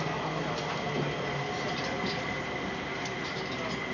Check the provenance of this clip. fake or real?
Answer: real